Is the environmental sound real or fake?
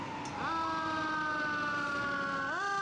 real